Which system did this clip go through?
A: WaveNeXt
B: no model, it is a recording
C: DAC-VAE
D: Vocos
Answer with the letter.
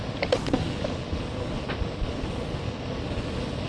B